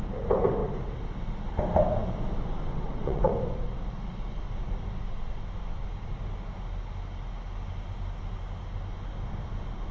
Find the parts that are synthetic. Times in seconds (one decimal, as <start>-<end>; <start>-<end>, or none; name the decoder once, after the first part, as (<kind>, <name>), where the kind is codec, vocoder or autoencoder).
2.7-3.3 (vocoder, WaveNeXt)